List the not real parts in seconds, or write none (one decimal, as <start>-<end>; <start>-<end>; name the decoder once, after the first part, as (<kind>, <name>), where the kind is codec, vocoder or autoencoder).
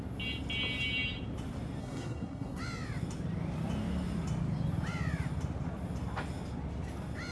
1.8-2.6 (codec, SNAC)